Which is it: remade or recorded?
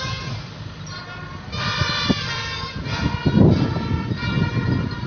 remade